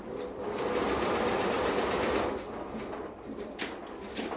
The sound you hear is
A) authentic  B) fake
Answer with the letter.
A